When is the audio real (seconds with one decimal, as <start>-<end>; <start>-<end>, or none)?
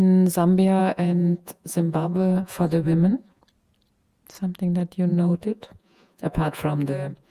0.0-0.8; 3.4-5.1